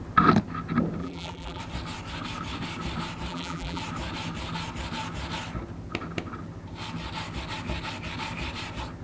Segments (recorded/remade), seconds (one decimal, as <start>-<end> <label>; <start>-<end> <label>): 0.0-1.0 recorded; 1.0-1.6 remade; 1.6-3.3 recorded; 3.3-3.8 remade; 3.8-9.0 recorded